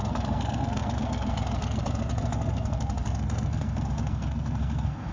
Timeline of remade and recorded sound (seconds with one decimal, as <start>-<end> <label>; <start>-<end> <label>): 0.0-5.1 remade